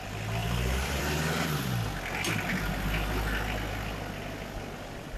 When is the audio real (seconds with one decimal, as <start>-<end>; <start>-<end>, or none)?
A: 0.0-0.4; 1.0-5.2